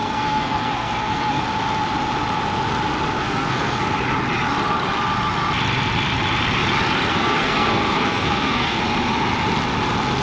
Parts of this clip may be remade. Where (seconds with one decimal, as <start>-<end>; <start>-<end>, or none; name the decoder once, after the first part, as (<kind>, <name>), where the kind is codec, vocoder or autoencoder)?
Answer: 0.0-1.4 (codec, SNAC); 3.2-3.9; 7.1-8.8